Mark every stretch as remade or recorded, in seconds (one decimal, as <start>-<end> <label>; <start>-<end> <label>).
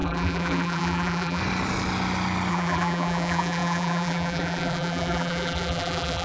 0.0-1.4 remade; 1.4-2.5 recorded; 2.5-6.2 remade